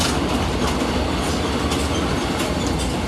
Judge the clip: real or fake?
real